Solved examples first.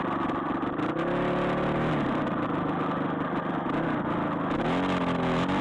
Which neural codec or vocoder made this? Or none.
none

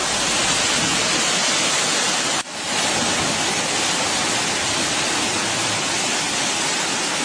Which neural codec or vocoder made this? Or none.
none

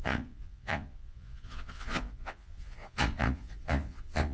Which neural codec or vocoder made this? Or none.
vocoder, Vocos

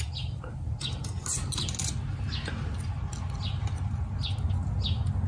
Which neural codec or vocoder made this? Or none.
none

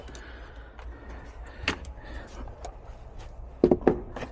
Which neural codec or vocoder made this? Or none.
none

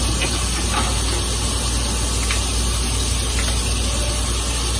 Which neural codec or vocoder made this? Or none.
none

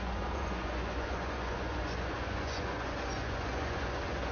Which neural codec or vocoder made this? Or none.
vocoder, Vocos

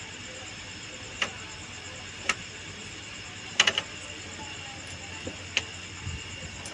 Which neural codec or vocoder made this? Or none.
none